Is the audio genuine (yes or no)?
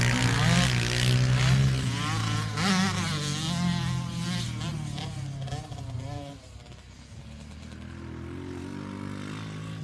yes